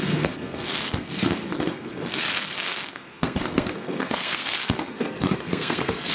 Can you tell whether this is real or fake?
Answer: fake